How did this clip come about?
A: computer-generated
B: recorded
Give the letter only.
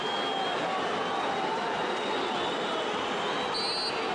B